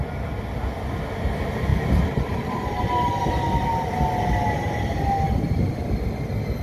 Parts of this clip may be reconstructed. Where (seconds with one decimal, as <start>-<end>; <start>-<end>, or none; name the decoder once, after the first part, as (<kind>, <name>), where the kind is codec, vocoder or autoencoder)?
none